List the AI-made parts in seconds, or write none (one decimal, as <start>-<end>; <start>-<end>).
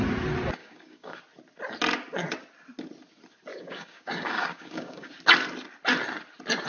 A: 0.6-1.2; 3.5-5.1